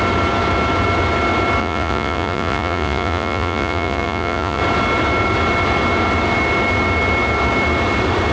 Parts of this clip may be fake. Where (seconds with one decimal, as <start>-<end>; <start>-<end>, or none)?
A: 1.6-4.6